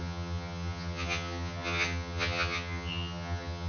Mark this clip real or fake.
fake